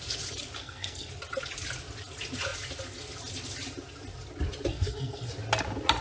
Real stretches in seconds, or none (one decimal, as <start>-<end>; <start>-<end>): 0.0-0.6; 1.1-4.7; 5.3-6.0